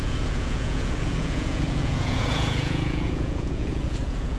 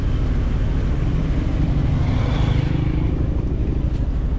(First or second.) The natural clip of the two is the second